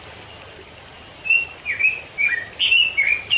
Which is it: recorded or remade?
recorded